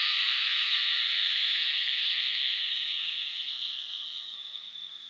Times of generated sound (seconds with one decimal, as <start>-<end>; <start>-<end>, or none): 0.0-5.1